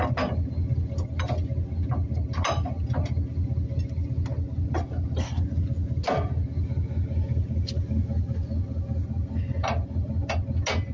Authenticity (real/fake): real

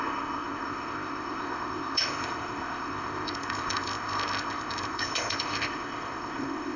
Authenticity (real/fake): fake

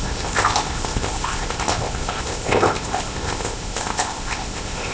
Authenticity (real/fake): fake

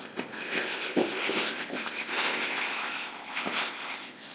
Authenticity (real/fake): fake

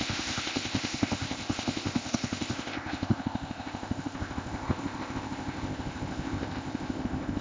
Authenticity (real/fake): fake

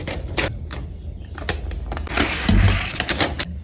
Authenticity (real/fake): real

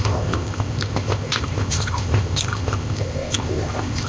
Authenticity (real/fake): fake